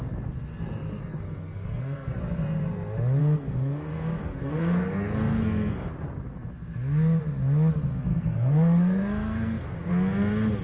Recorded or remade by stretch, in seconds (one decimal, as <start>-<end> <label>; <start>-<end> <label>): 0.0-1.0 recorded; 1.0-2.2 remade; 2.2-3.2 recorded; 3.2-5.9 remade; 5.9-8.1 recorded; 8.1-9.9 remade; 9.9-10.6 recorded

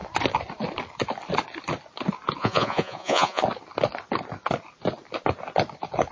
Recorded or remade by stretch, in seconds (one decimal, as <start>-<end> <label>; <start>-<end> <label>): 0.0-2.4 recorded; 2.4-3.4 remade; 3.4-6.1 recorded